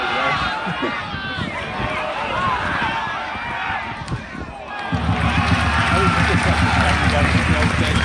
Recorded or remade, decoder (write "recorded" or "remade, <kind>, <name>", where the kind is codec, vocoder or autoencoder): recorded